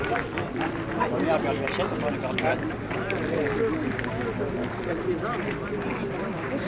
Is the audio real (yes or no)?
yes